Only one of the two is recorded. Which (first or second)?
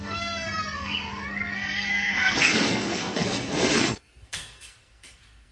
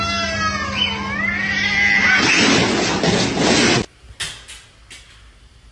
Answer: second